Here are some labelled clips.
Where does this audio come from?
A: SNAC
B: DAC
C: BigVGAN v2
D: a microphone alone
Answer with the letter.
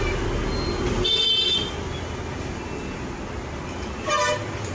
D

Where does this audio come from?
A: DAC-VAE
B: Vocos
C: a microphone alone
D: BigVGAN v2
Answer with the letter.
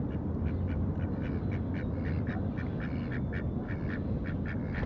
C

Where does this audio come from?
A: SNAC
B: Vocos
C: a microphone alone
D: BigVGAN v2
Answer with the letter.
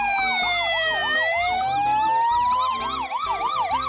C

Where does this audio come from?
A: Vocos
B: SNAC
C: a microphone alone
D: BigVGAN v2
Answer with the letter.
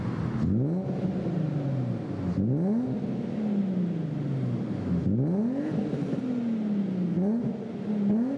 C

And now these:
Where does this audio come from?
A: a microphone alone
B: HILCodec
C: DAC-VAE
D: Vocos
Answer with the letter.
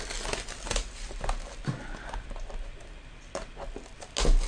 A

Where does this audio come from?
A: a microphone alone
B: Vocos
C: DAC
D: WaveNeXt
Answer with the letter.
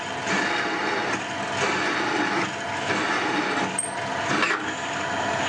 A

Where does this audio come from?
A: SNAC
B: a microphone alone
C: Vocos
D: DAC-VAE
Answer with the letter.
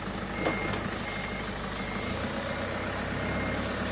B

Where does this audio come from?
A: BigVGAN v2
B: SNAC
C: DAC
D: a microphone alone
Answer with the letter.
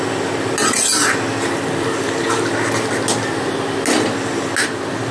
D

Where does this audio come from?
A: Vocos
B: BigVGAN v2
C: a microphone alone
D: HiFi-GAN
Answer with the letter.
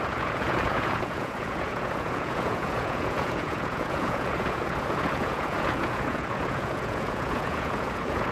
A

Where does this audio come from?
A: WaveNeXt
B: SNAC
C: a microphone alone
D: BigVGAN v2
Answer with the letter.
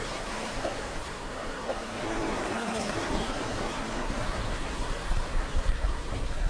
B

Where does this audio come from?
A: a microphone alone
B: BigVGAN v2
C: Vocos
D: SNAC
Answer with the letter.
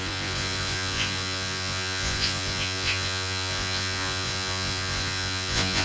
C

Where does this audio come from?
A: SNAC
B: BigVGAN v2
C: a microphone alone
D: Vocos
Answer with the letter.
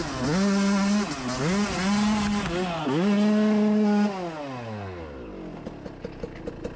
C